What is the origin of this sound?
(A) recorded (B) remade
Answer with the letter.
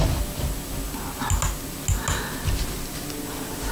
A